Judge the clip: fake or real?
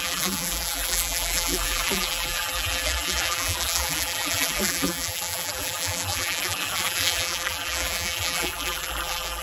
fake